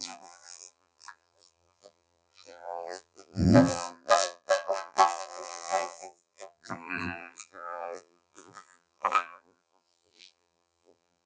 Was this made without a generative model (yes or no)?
no